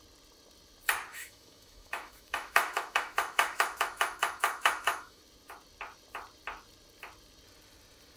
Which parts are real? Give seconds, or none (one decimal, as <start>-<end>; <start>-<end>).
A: 0.0-1.1; 5.2-8.2